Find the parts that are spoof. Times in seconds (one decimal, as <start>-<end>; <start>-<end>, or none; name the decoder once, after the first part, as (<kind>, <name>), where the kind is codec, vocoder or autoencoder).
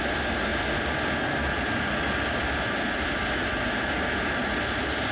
none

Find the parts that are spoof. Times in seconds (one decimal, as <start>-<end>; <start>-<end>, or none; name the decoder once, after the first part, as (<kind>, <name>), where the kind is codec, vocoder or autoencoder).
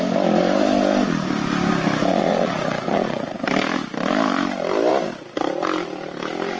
2.1-3.5 (vocoder, Vocos)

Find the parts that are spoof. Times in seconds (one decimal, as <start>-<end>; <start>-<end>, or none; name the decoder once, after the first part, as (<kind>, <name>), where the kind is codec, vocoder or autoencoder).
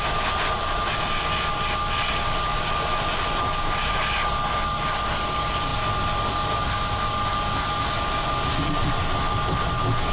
none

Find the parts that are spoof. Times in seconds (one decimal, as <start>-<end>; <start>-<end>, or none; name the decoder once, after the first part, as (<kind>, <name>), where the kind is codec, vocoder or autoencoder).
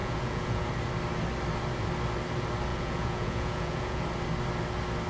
0.0-0.7 (vocoder, Vocos); 2.7-4.0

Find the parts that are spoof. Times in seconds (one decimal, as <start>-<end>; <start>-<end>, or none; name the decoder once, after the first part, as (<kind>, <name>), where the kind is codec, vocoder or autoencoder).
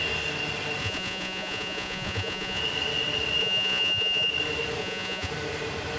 0.8-2.6 (vocoder, Vocos); 3.4-4.3; 4.8-5.3